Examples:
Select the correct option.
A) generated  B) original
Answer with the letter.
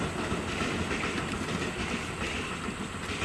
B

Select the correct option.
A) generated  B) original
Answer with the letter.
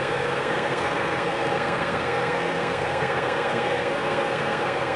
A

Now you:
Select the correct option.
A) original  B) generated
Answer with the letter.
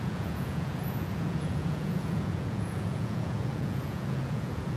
B